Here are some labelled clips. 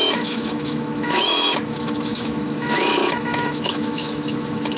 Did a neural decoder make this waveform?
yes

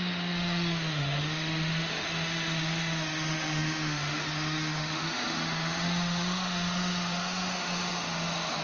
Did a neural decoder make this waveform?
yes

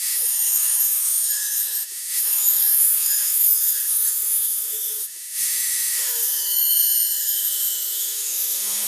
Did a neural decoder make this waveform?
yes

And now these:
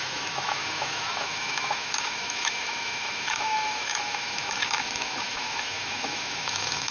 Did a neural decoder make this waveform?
yes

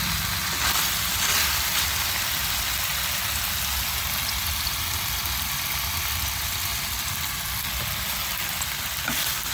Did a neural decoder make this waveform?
no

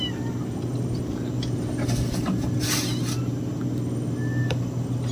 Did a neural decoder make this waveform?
no